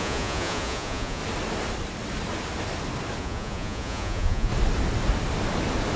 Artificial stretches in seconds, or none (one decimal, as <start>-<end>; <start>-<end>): 0.0-1.2; 3.2-4.5